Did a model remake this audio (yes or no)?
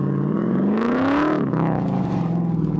yes